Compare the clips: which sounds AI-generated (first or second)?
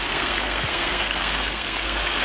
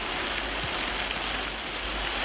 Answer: first